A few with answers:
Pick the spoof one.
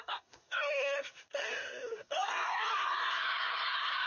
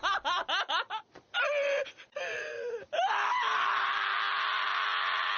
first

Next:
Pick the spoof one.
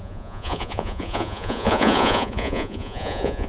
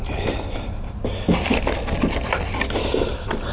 first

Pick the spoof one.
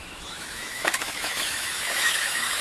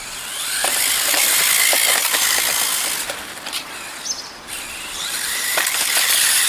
first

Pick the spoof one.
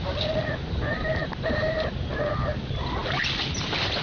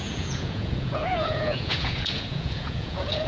second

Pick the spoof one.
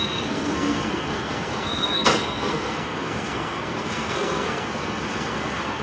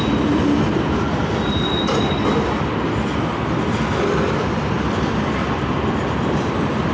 first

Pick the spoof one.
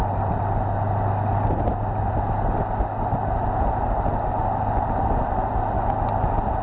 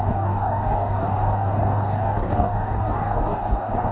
second